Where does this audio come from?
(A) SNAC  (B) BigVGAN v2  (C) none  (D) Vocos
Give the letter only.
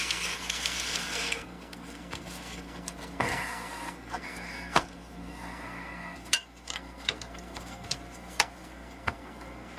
A